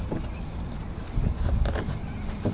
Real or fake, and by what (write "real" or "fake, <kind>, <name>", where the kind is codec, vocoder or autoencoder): real